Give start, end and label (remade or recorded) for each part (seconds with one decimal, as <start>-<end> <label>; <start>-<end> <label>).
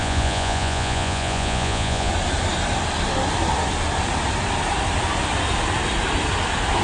0.0-2.1 remade; 2.1-6.8 recorded